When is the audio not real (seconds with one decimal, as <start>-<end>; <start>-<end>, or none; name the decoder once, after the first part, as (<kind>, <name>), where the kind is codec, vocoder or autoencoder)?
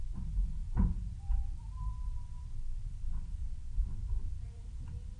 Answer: 0.0-3.4 (vocoder, BigVGAN v2); 4.3-5.2